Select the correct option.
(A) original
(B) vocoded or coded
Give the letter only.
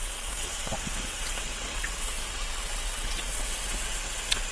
B